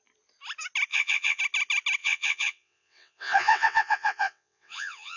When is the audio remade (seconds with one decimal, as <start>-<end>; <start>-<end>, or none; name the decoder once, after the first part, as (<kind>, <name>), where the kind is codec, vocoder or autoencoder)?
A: 0.9-1.4 (vocoder, WaveNeXt); 2.0-5.2